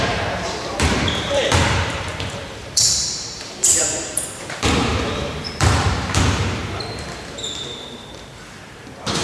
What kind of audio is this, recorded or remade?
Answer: remade